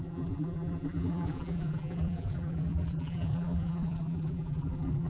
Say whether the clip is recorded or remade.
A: remade